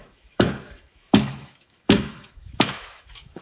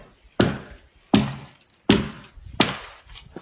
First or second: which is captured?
second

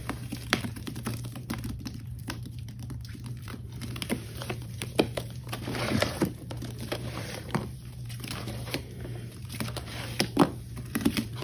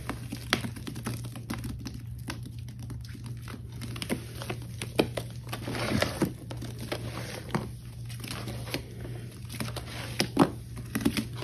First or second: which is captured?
second